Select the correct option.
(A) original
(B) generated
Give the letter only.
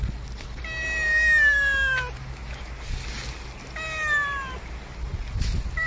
A